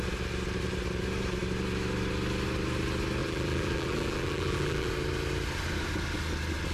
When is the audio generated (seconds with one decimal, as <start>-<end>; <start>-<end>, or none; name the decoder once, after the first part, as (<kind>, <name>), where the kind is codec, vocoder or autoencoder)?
3.2-4.9 (vocoder, BigVGAN v2)